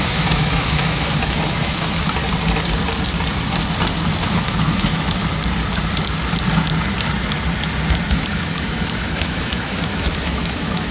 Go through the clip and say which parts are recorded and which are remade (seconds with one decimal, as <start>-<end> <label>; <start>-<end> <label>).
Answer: 0.0-2.2 remade; 2.2-4.3 recorded; 4.3-5.2 remade; 5.2-8.1 recorded; 8.1-10.9 remade